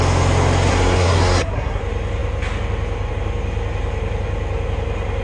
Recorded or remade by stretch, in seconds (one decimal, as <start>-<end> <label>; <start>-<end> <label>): 0.0-0.7 recorded; 0.7-1.8 remade; 1.8-5.2 recorded